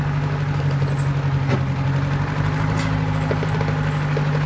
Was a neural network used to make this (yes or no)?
no